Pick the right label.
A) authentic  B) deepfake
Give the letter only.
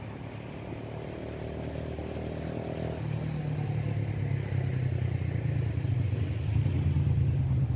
A